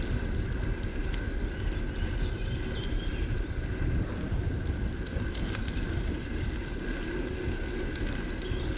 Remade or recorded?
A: recorded